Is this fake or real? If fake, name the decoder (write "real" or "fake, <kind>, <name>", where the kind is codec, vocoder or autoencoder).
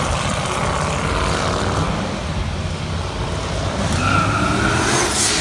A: real